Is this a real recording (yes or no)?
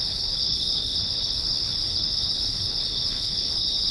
no